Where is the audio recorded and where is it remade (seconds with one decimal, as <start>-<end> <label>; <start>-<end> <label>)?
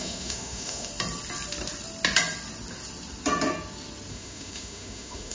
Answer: 0.0-0.9 remade; 0.9-4.1 recorded; 4.1-5.3 remade